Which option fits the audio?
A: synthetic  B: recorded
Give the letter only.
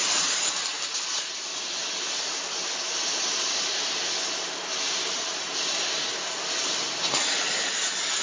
B